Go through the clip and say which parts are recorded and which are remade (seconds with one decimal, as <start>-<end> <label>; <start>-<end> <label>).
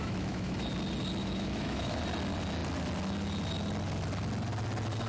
0.0-0.7 remade; 0.7-1.2 recorded; 1.2-2.0 remade; 2.0-5.1 recorded